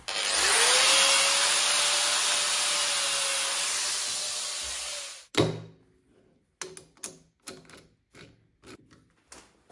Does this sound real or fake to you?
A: real